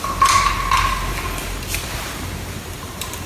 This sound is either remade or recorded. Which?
recorded